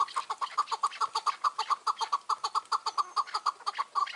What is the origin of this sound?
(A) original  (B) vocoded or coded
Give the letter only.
A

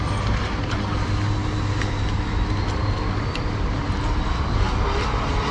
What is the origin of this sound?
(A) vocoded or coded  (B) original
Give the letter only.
B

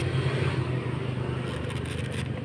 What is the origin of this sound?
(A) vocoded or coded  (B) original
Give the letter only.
B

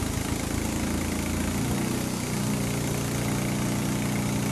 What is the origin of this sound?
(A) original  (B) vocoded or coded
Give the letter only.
A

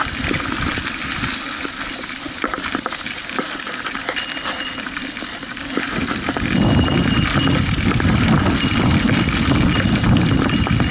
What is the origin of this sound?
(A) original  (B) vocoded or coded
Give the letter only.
B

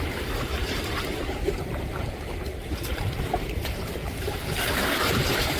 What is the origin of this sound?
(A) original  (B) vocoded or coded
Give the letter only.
B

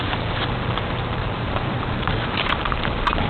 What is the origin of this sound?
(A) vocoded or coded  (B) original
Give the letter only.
A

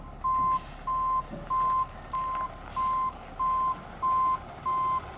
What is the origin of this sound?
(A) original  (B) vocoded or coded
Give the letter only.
A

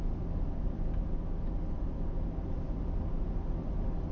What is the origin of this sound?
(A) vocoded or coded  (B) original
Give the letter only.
B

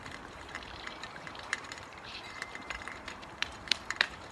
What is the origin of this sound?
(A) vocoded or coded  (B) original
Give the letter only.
A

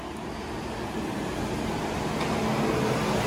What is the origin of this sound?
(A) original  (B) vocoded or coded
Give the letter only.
A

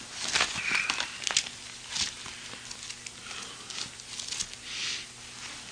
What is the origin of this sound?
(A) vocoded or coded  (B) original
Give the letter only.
B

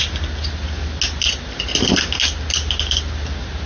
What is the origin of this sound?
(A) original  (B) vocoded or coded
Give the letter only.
A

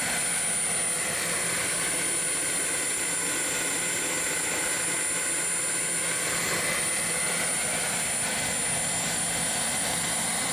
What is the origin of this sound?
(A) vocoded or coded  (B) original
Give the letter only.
B